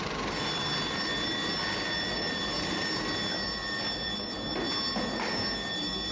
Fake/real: real